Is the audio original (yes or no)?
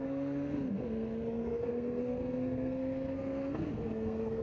no